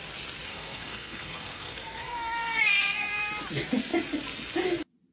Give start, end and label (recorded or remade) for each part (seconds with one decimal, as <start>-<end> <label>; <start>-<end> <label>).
0.0-0.5 recorded; 0.5-3.1 remade; 3.1-5.1 recorded